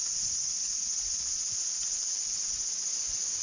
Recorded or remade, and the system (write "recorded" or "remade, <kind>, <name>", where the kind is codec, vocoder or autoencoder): recorded